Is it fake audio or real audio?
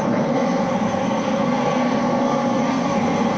fake